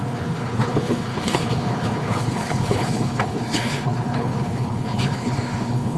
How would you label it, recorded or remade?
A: remade